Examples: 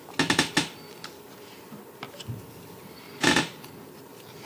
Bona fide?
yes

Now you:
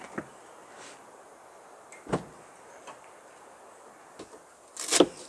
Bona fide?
yes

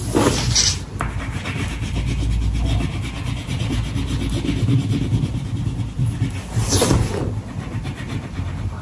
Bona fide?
yes